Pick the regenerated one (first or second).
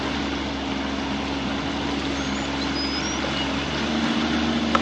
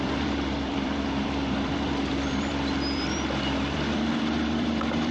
second